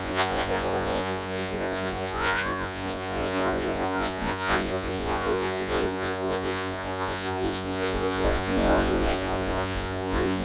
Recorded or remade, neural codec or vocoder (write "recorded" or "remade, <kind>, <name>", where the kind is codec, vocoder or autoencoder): remade, vocoder, Vocos